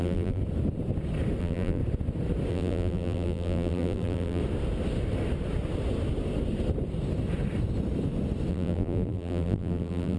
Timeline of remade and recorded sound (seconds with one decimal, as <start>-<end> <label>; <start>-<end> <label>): 0.0-0.4 remade; 0.4-1.4 recorded; 1.4-1.8 remade; 1.8-2.5 recorded; 2.5-4.4 remade; 4.4-8.5 recorded; 8.5-10.2 remade

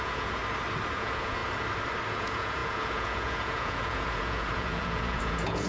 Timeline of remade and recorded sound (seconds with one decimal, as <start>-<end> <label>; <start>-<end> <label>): 0.0-0.4 remade; 0.4-0.9 recorded; 0.9-1.4 remade; 1.4-2.1 recorded; 2.1-5.7 remade

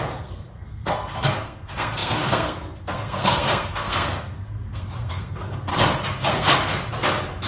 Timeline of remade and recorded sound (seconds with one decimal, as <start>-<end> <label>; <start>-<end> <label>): 0.0-5.7 remade; 5.7-6.3 recorded; 6.3-6.7 remade; 6.7-7.5 recorded

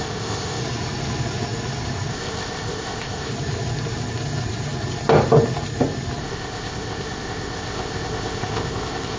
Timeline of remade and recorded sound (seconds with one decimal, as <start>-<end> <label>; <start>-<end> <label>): 0.0-0.6 remade; 0.6-2.1 recorded; 2.1-3.3 remade; 3.3-6.2 recorded; 6.2-9.2 remade

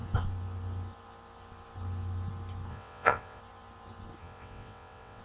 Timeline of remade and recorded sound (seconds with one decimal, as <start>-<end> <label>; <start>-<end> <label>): 0.0-2.7 recorded; 2.7-3.4 remade; 3.4-4.2 recorded; 4.2-5.2 remade

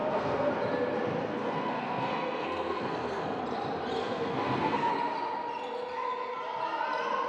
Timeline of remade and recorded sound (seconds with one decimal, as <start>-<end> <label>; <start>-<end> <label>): 0.0-0.5 remade; 0.5-1.2 recorded; 1.2-3.4 remade; 3.4-4.0 recorded; 4.0-4.9 remade; 4.9-7.3 recorded